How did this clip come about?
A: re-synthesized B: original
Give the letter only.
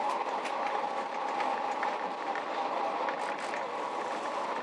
B